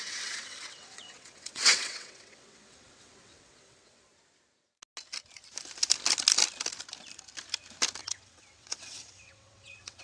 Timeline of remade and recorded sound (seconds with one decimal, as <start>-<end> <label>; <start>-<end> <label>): 0.0-4.1 remade; 4.1-8.0 recorded; 8.0-10.0 remade

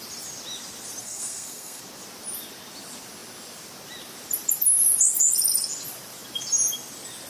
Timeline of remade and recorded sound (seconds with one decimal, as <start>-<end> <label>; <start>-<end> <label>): 0.0-1.0 recorded; 1.0-1.8 remade; 1.8-7.3 recorded